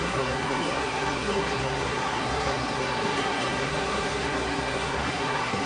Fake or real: fake